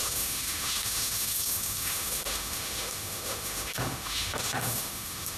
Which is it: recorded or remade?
remade